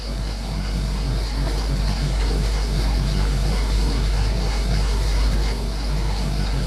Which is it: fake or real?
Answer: fake